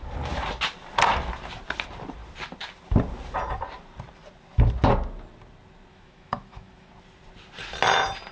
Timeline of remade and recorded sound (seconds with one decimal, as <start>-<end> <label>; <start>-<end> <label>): 0.0-5.9 recorded; 5.9-6.9 remade; 6.9-8.3 recorded